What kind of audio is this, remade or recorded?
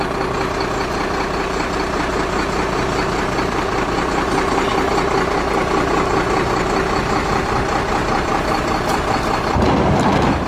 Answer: recorded